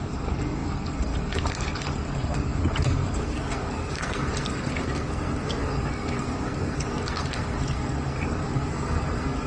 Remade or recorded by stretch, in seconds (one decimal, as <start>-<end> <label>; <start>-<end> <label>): 0.0-9.5 remade